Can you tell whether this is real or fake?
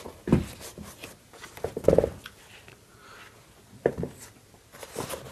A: real